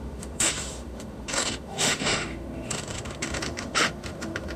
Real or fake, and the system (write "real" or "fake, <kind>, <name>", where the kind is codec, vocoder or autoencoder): fake, autoencoder, DAC-VAE